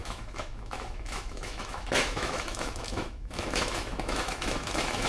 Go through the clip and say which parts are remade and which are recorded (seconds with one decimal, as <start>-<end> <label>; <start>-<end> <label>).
0.0-5.1 remade